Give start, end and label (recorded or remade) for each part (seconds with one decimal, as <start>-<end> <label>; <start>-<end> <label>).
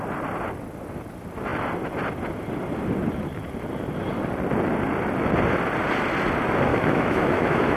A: 0.0-6.7 recorded; 6.7-7.8 remade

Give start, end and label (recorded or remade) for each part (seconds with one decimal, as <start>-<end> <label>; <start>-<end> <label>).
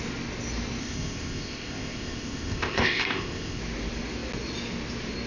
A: 0.0-0.8 recorded; 0.8-3.6 remade; 3.6-5.3 recorded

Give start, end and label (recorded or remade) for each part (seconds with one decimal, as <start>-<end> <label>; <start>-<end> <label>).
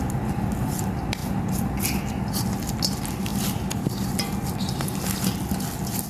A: 0.0-6.1 recorded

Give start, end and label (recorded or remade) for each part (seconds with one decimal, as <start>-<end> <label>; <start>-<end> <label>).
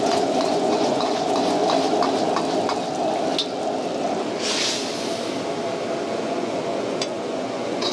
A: 0.0-1.6 remade; 1.6-6.1 recorded; 6.1-7.9 remade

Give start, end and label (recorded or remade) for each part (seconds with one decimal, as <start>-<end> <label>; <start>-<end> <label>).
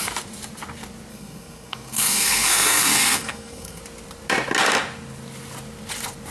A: 0.0-1.1 recorded; 1.1-3.8 remade; 3.8-6.3 recorded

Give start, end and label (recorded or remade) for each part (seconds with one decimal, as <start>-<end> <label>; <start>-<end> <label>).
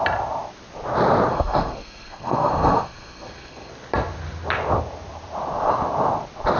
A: 0.0-1.3 recorded; 1.3-3.7 remade; 3.7-6.6 recorded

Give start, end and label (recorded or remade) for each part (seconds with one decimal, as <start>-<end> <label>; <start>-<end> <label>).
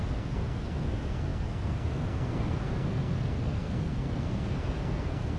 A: 0.0-5.4 remade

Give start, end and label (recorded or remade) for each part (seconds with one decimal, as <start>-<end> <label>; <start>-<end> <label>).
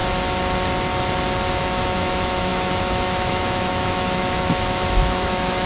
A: 0.0-1.6 recorded; 1.6-5.7 remade